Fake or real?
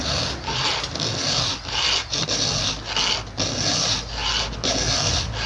real